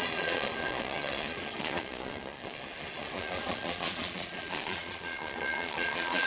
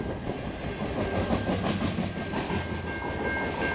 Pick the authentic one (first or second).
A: second